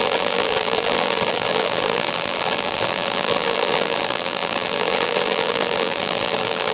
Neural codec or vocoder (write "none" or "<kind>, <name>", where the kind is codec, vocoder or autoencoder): vocoder, BigVGAN v2